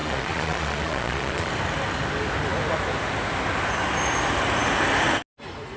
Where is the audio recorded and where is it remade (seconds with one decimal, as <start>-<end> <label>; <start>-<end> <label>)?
0.0-1.5 remade; 1.5-5.8 recorded